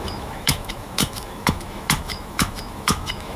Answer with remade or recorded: remade